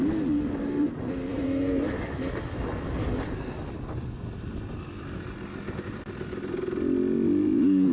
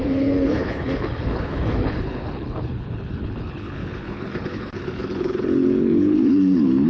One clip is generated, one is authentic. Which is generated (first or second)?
second